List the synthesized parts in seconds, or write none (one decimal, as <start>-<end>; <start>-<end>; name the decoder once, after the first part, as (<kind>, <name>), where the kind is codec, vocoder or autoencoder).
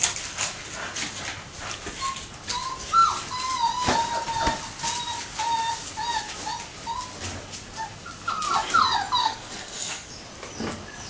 9.2-10.1 (codec, SNAC)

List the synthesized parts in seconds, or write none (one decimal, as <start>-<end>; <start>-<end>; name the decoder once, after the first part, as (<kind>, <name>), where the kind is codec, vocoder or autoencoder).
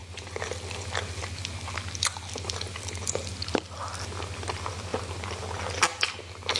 none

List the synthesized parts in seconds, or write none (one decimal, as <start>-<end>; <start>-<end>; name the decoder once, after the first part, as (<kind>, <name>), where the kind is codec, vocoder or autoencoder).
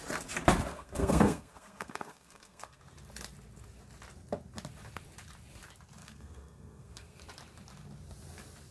0.7-2.8 (codec, SNAC); 6.0-7.2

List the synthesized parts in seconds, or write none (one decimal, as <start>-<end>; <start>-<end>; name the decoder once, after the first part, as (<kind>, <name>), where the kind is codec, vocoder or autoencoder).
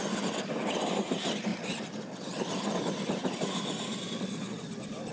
none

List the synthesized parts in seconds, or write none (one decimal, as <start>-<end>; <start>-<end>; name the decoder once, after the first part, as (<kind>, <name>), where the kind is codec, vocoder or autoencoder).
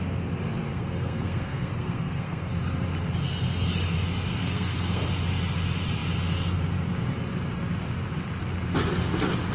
0.7-2.5 (codec, SNAC); 4.3-5.0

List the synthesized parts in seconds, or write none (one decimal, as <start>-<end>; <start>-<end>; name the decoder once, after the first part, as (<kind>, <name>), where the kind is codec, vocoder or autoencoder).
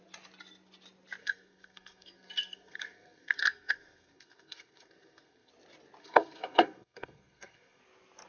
1.2-5.5 (codec, SNAC); 6.0-7.8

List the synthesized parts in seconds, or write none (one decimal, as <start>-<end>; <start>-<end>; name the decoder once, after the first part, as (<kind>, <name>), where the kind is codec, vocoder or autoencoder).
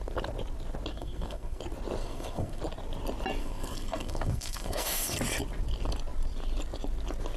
0.9-1.6 (codec, SNAC); 2.0-2.6; 3.4-5.2